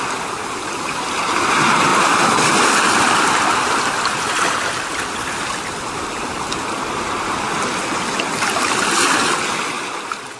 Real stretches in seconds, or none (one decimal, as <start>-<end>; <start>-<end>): 0.0-10.4

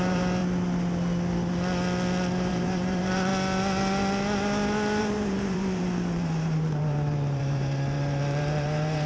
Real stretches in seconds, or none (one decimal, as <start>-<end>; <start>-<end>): 0.4-2.5; 3.3-5.0

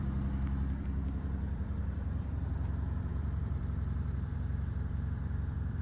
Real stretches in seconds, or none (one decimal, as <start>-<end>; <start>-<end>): none

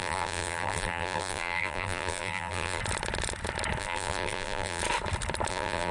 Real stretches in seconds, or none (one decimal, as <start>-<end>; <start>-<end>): 2.8-3.8; 4.8-5.5

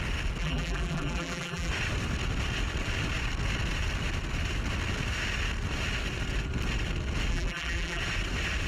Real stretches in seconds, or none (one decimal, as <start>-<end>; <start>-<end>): 0.0-0.4; 1.7-7.3; 8.0-8.7